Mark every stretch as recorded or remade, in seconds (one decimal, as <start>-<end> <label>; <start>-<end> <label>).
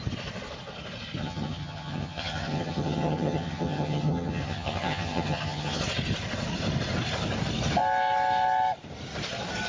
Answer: 0.0-1.2 recorded; 1.2-5.8 remade; 5.8-9.7 recorded